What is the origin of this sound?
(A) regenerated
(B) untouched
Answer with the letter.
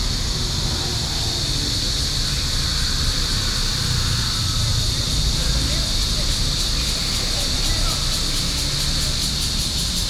B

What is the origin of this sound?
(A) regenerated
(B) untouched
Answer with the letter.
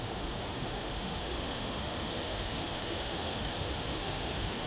A